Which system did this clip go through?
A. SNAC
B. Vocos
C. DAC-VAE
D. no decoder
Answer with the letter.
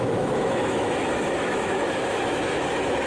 C